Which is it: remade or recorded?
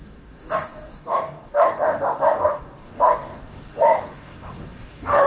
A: remade